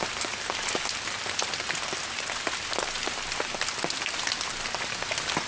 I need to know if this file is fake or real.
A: real